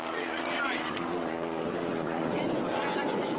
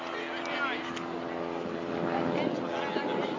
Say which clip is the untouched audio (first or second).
second